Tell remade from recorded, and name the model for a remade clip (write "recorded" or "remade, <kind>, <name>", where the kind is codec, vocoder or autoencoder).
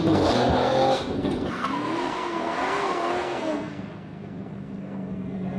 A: remade, codec, SNAC